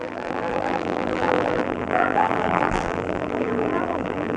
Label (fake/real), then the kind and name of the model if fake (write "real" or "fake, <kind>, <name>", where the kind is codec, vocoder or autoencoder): fake, vocoder, BigVGAN v2